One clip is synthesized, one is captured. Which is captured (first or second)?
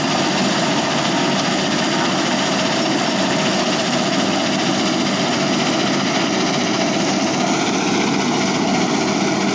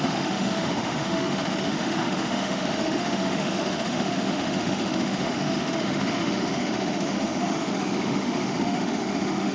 first